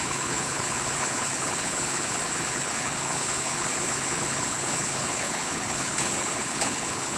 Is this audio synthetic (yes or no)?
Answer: yes